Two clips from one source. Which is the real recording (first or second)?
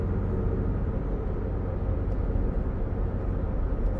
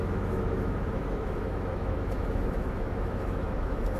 first